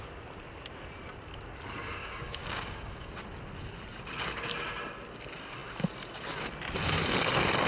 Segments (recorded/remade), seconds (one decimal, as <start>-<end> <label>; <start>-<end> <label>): 0.0-2.0 recorded; 2.0-3.1 remade; 3.1-7.7 recorded